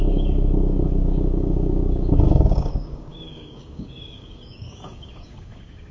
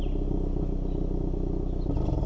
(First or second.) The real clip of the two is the second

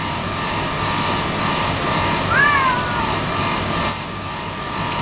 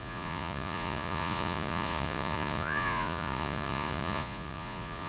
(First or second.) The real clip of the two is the first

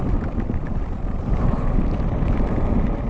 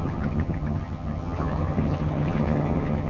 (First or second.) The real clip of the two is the first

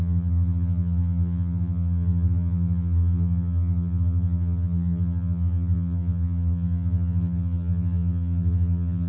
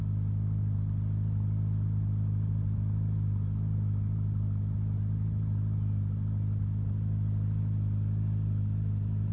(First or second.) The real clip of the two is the second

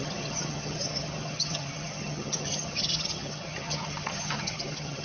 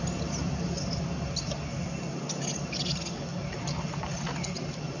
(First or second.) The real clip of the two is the second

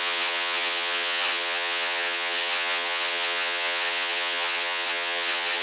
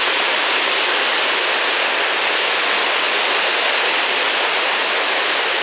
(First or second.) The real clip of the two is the second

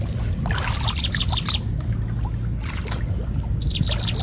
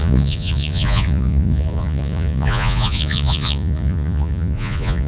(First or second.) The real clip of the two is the first